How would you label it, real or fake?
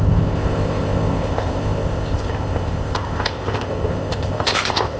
fake